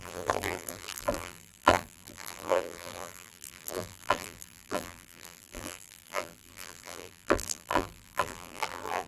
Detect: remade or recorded remade